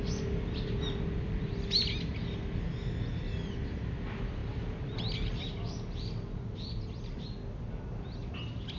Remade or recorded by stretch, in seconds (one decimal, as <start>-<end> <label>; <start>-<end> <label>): 0.0-8.8 recorded